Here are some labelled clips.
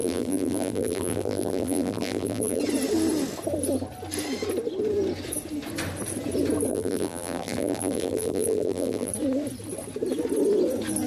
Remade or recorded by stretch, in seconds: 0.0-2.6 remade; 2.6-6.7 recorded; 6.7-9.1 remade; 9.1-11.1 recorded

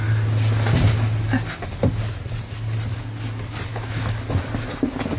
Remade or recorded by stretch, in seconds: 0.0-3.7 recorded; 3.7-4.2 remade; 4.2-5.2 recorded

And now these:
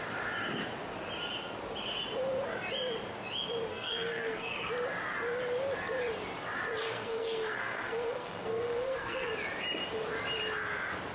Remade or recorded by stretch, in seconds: 0.0-3.7 recorded; 3.7-4.7 remade; 4.7-6.8 recorded; 6.8-9.3 remade; 9.3-11.1 recorded

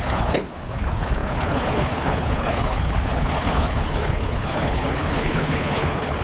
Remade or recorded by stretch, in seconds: 0.0-6.2 remade

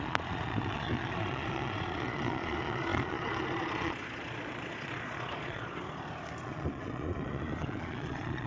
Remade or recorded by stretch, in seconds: 0.0-5.7 remade; 5.7-6.4 recorded; 6.4-8.5 remade

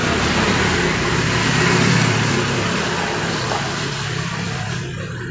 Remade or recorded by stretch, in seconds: 0.0-5.3 recorded

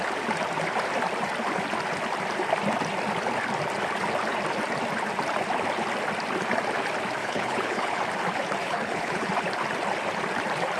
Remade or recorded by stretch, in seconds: 0.0-7.2 recorded; 7.2-8.0 remade; 8.0-8.6 recorded; 8.6-9.3 remade; 9.3-10.8 recorded

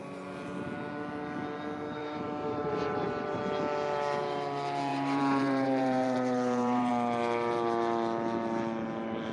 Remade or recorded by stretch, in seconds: 0.0-2.0 recorded; 2.0-3.4 remade; 3.4-4.9 recorded; 4.9-6.9 remade; 6.9-9.3 recorded